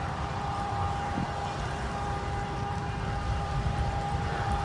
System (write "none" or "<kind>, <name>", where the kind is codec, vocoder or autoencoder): vocoder, BigVGAN v2